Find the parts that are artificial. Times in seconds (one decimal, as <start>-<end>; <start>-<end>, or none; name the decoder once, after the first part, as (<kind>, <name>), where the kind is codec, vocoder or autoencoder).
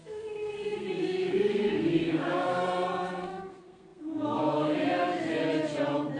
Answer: 0.0-5.3 (codec, SNAC)